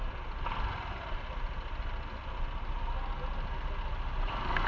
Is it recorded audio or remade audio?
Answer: recorded